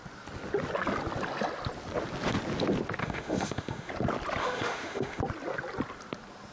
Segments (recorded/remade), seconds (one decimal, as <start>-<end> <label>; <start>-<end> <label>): 0.0-3.0 recorded; 3.0-3.9 remade; 3.9-4.4 recorded; 4.4-5.2 remade; 5.2-6.5 recorded